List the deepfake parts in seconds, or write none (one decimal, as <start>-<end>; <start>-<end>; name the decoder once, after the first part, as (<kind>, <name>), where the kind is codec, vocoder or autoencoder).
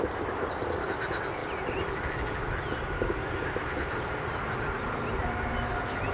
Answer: none